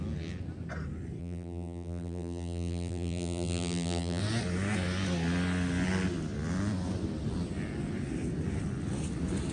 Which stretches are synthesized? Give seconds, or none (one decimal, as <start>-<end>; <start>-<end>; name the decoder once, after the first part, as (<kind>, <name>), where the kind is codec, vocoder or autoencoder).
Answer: 1.2-4.2 (vocoder, BigVGAN v2)